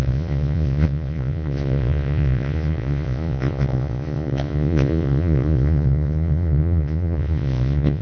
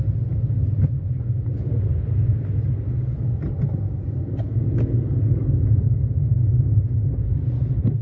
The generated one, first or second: first